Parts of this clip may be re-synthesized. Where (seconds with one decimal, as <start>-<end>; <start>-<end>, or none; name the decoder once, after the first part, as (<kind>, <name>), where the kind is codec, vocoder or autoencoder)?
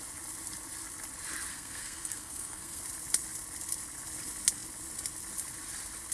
1.5-2.8 (codec, SNAC)